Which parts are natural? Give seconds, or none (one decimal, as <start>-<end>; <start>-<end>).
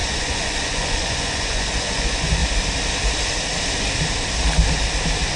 2.4-5.4